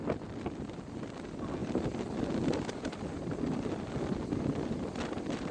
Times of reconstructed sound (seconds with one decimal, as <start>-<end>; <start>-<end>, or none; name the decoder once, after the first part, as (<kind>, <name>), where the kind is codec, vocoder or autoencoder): none